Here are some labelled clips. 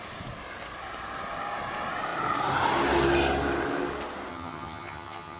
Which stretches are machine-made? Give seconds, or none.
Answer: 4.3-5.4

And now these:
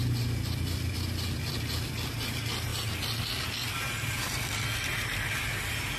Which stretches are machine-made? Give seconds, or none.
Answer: 2.7-4.6

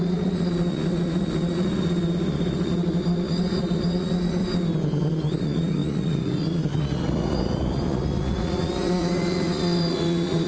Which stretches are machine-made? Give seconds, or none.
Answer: 0.0-4.4; 5.0-10.5

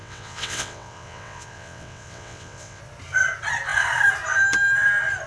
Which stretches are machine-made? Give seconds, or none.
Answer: 0.0-2.8

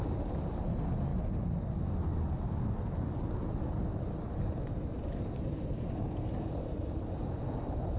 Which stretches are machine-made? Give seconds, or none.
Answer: none

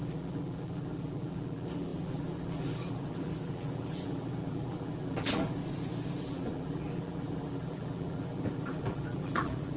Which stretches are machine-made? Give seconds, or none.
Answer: 0.0-5.6; 6.2-9.8

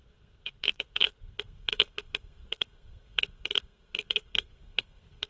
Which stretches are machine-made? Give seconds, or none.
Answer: 0.0-5.3

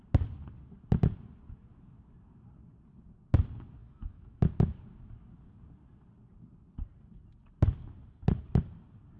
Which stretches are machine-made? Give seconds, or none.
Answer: 3.8-4.4